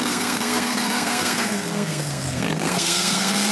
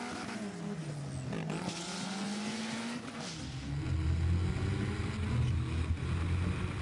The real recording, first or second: second